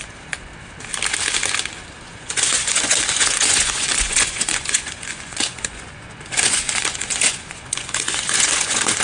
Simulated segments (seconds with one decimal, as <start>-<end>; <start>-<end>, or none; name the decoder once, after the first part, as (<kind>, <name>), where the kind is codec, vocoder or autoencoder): 0.0-0.5 (vocoder, Vocos); 2.0-9.0